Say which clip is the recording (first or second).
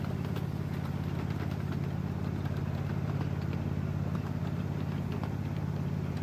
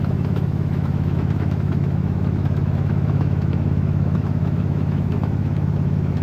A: first